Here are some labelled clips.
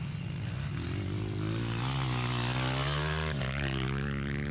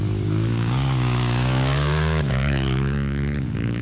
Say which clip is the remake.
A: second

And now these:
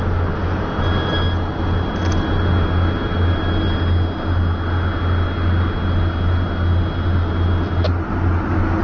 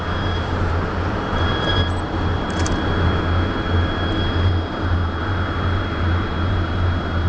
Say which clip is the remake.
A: second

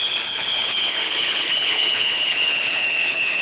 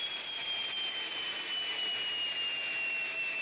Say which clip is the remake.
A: first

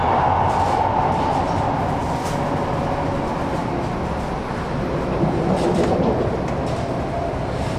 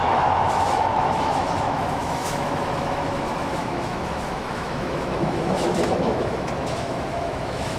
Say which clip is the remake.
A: second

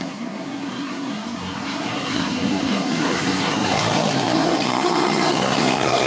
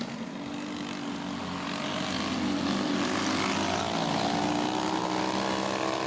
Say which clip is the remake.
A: first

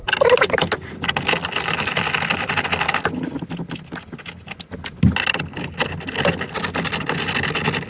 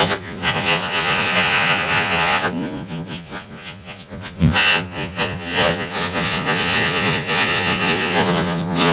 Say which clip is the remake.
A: second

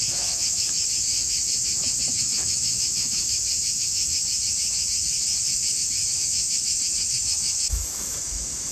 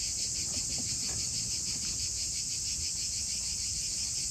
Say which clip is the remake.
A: first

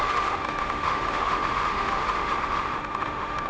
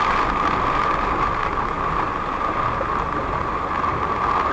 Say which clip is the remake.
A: first